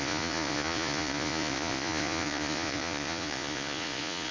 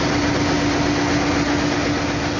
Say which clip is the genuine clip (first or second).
second